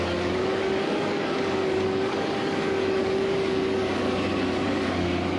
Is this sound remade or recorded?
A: remade